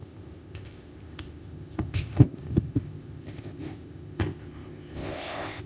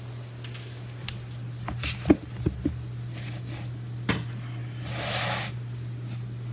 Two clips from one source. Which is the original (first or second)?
second